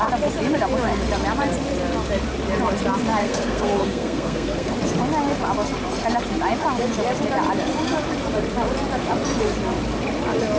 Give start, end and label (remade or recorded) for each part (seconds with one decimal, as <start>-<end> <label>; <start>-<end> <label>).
0.0-3.2 recorded; 3.2-4.7 remade; 4.7-10.6 recorded